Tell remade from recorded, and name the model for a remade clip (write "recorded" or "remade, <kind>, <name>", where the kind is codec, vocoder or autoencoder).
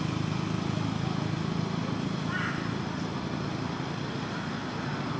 recorded